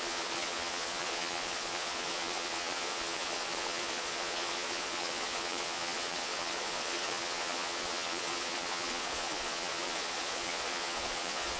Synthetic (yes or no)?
yes